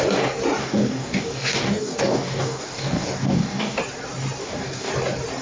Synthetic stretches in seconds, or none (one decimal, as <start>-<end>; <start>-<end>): 0.6-3.8; 4.4-4.9